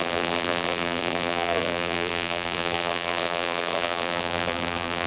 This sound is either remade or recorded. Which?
remade